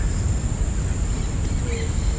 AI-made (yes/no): no